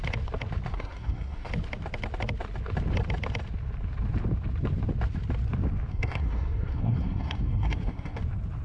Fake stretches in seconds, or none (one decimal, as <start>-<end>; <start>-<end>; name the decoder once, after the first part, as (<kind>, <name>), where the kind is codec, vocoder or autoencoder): 0.7-1.5 (codec, SNAC); 5.9-8.2